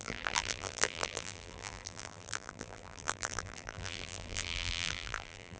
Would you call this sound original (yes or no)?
no